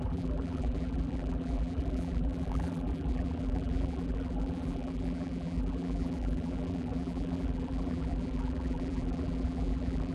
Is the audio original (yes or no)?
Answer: no